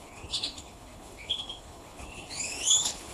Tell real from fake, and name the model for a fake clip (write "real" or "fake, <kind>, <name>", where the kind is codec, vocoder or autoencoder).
fake, codec, HILCodec